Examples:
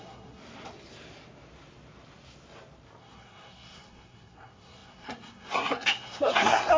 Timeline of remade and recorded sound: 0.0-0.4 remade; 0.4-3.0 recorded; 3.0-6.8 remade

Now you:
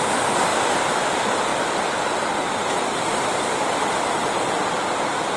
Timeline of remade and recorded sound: 0.0-0.5 recorded; 0.5-1.1 remade; 1.1-1.5 recorded; 1.5-3.5 remade; 3.5-5.4 recorded

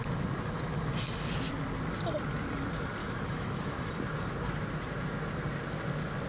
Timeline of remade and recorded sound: 0.0-3.0 recorded; 3.0-3.9 remade; 3.9-6.3 recorded